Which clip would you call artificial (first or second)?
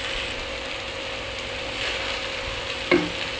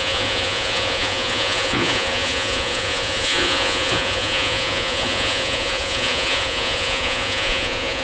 second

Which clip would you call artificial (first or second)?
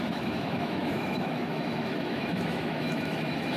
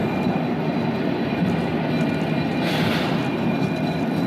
first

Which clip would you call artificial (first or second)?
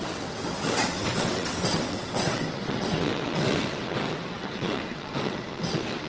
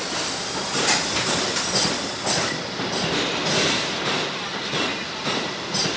first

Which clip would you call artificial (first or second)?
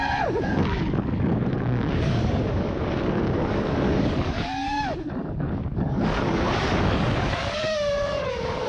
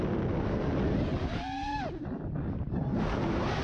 first